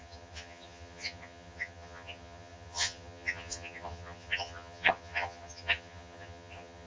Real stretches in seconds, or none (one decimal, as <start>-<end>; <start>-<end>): none